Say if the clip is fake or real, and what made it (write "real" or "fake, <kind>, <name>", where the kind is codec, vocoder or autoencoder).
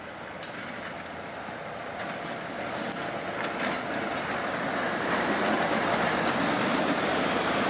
real